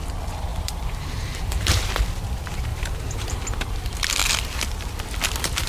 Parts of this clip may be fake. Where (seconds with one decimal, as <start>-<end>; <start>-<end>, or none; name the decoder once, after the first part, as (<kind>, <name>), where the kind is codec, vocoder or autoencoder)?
0.5-1.9 (vocoder, BigVGAN v2); 2.7-3.7